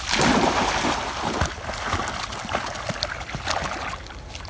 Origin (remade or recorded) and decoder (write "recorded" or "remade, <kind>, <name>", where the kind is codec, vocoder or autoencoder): recorded